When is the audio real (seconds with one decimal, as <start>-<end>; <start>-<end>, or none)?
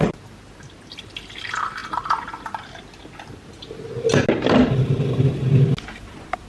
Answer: 0.0-6.5